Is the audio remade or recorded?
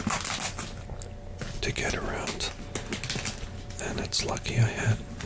recorded